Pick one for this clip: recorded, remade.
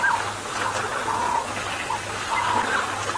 recorded